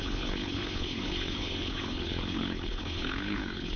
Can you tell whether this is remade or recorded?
remade